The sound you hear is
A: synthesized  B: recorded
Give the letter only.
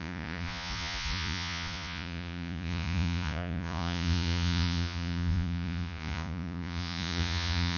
A